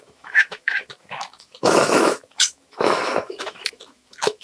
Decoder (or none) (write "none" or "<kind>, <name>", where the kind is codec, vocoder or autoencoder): autoencoder, DAC-VAE